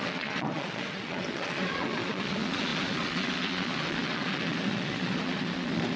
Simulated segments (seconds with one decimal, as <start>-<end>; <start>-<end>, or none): 0.0-6.0